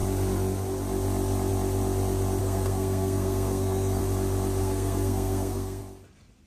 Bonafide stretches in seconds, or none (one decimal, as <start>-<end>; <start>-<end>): 0.0-2.4; 4.0-4.6; 5.8-6.5